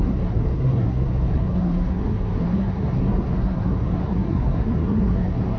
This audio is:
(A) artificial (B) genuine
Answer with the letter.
A